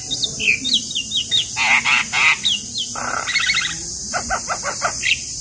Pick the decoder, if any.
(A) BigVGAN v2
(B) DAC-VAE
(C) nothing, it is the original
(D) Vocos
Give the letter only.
C